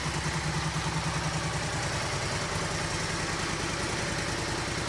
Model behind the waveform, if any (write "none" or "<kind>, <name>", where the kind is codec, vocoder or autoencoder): none